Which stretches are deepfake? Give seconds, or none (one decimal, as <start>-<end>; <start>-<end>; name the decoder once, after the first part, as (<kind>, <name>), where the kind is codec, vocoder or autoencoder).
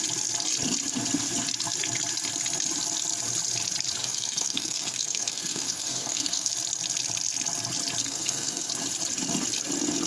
4.0-6.5 (codec, SNAC); 8.0-8.7